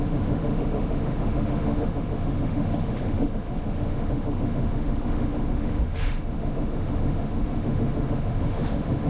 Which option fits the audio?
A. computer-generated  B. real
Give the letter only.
A